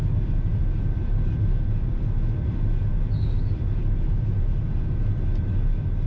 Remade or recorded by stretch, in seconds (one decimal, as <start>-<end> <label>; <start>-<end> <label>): 0.0-6.1 recorded